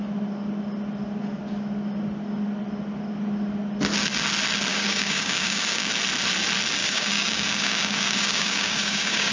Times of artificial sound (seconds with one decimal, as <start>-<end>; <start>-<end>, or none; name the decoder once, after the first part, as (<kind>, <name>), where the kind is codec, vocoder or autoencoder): 4.7-5.9 (codec, DAC); 6.8-9.3